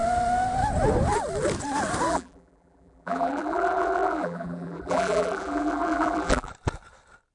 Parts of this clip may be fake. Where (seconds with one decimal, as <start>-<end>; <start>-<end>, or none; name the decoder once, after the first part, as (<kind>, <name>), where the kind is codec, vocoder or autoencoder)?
2.1-6.5 (vocoder, BigVGAN v2)

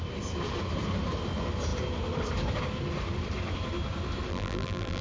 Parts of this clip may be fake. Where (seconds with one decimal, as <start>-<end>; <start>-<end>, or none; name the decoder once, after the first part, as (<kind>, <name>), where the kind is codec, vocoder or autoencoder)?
4.3-5.0 (vocoder, BigVGAN v2)